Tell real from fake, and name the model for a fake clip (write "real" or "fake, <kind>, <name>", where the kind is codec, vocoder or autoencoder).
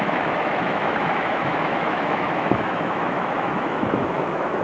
fake, autoencoder, DAC-VAE